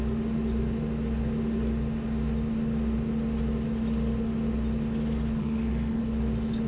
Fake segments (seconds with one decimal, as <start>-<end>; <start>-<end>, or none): 5.4-6.0